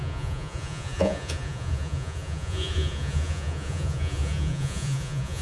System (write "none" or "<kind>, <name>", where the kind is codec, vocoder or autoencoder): vocoder, Vocos